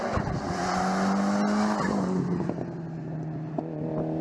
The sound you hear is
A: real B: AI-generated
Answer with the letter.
A